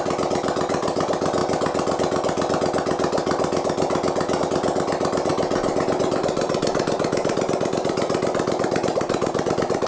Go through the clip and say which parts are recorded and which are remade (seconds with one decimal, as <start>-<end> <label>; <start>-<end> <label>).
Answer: 0.0-1.4 remade; 1.4-4.4 recorded; 4.4-5.3 remade; 5.3-6.0 recorded; 6.0-9.9 remade